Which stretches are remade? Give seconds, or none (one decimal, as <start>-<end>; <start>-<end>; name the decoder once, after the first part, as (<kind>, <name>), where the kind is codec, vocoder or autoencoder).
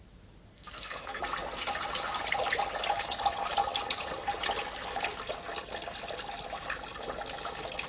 0.5-1.2 (codec, SNAC)